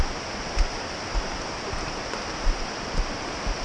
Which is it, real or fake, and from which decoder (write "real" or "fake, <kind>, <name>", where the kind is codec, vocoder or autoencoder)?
real